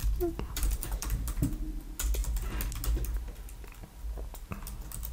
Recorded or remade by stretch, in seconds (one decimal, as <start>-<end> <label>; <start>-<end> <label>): 0.0-1.5 remade; 1.5-5.1 recorded